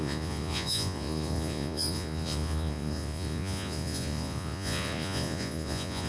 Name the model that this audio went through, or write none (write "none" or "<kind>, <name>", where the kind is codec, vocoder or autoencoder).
vocoder, Vocos